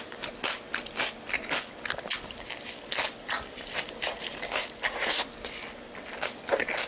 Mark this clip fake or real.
real